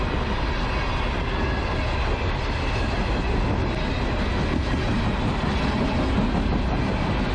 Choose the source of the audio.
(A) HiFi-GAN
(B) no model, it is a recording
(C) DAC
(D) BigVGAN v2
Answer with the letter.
B